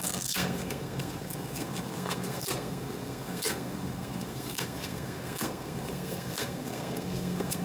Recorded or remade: remade